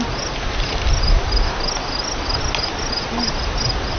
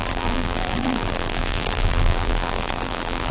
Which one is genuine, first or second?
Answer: first